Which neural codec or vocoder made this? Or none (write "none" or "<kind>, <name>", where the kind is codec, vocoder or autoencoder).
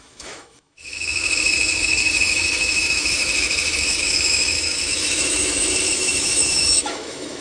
autoencoder, DAC-VAE